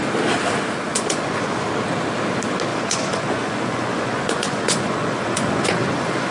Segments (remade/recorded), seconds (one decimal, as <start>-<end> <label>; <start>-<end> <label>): 0.0-0.9 recorded; 0.9-1.7 remade; 1.7-2.7 recorded; 2.7-6.3 remade